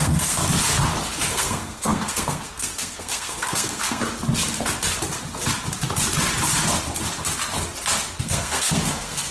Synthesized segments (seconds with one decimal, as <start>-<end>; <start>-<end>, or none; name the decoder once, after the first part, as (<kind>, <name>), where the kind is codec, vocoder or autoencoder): 0.0-0.4 (codec, SNAC); 1.3-4.0; 8.2-9.3